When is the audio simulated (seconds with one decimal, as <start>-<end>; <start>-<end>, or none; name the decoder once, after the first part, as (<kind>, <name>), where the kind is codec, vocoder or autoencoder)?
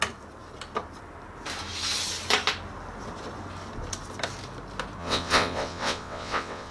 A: 5.0-6.7 (vocoder, WaveNeXt)